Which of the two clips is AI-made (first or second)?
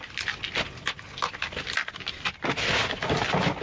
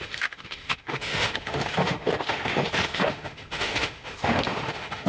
second